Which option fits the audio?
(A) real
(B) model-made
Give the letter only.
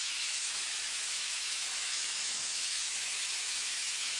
B